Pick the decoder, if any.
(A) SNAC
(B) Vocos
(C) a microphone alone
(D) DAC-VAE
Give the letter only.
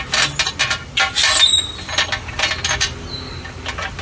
C